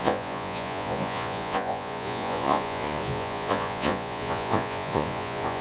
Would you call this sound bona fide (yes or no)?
no